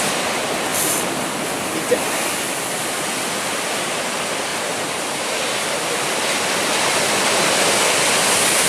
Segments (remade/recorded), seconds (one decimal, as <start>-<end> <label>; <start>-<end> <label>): 0.0-0.7 recorded; 0.7-1.2 remade; 1.2-4.5 recorded; 4.5-5.4 remade; 5.4-8.7 recorded